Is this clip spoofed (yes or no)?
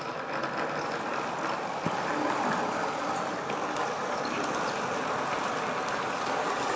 no